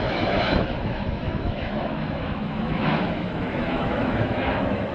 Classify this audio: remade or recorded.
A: remade